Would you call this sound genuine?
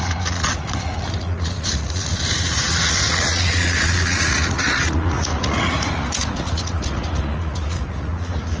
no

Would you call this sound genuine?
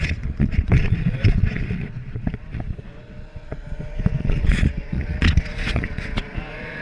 no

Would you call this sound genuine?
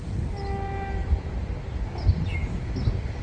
yes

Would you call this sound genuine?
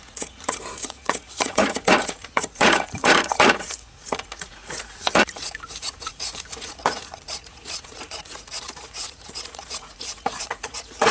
no